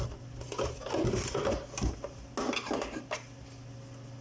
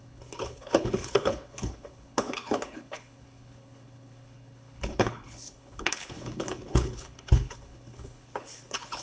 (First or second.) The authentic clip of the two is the first